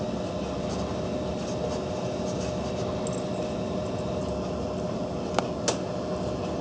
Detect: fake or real real